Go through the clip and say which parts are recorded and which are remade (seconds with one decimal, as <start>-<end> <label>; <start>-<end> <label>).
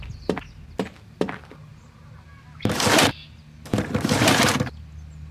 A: 0.0-5.3 recorded